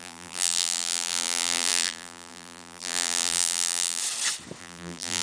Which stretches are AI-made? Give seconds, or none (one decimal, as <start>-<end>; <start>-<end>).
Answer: 0.0-4.0; 4.6-5.2